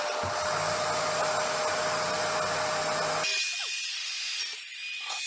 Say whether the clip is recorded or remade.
recorded